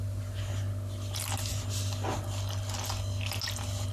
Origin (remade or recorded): recorded